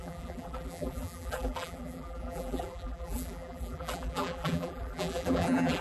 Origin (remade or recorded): remade